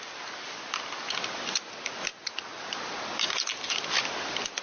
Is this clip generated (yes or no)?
no